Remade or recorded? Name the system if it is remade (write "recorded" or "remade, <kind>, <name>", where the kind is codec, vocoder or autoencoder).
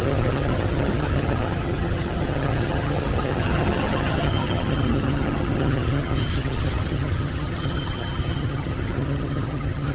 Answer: remade, vocoder, HiFi-GAN